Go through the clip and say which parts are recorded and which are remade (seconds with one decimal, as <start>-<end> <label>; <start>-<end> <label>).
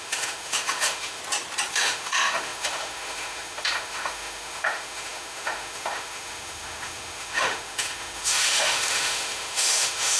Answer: 0.0-1.2 remade; 1.2-1.7 recorded; 1.7-10.2 remade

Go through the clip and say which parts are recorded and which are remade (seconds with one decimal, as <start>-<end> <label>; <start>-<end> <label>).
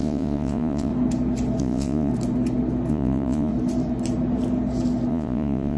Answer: 0.0-0.9 remade; 0.9-1.6 recorded; 1.6-2.1 remade; 2.1-2.9 recorded; 2.9-3.5 remade; 3.5-5.1 recorded; 5.1-5.8 remade